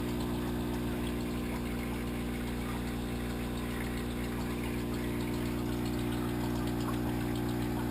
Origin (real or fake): real